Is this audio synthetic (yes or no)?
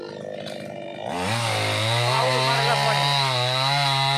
no